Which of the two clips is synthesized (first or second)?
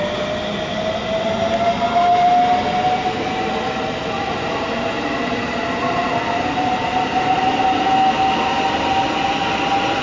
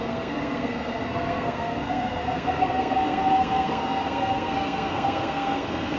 second